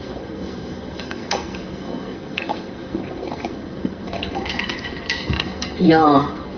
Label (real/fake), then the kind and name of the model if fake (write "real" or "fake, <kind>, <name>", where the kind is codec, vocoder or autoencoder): fake, codec, SNAC